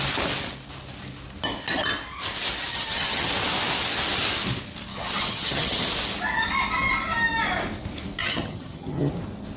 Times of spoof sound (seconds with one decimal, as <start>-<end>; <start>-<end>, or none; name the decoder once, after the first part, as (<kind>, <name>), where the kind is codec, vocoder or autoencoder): 2.7-3.3 (vocoder, HiFi-GAN); 4.9-5.8; 8.2-9.1